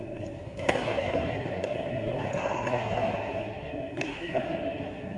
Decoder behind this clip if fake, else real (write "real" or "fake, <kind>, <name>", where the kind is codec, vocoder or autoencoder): fake, codec, SNAC